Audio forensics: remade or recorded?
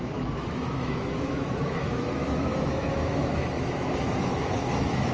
remade